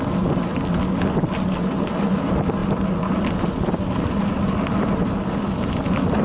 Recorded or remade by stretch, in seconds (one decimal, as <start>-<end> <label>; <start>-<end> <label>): 0.0-6.2 recorded

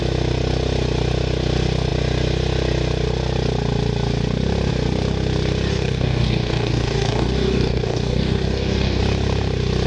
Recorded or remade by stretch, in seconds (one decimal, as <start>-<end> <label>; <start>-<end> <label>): 0.0-5.7 recorded; 5.7-9.0 remade; 9.0-9.9 recorded

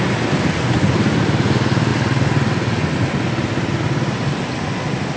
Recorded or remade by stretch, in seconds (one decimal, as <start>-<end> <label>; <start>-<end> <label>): 0.0-5.2 recorded